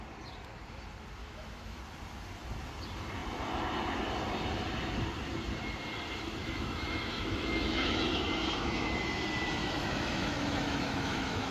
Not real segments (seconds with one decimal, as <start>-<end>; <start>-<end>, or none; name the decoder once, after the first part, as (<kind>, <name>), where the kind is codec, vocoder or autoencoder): 1.2-1.8 (autoencoder, DAC-VAE); 6.4-8.9; 9.6-11.5